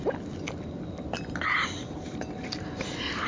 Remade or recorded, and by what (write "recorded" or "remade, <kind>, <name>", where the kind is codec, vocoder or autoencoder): recorded